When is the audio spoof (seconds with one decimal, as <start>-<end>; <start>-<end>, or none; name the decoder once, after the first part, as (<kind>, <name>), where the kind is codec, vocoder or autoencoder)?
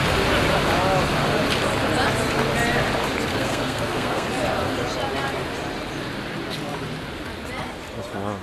3.3-4.3 (codec, SNAC)